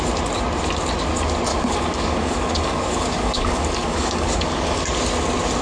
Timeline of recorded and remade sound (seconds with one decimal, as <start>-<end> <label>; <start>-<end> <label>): 0.0-1.5 recorded; 1.5-4.8 remade; 4.8-5.6 recorded